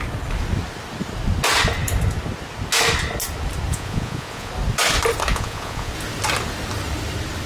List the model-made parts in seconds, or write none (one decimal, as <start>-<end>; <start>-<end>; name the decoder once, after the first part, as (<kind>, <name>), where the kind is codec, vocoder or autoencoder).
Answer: 3.7-4.5 (vocoder, Vocos); 5.3-5.9